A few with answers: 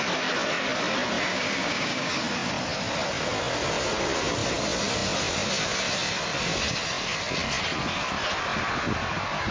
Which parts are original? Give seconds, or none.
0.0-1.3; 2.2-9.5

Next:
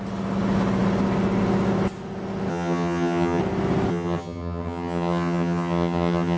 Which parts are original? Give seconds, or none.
0.0-2.5; 3.4-3.9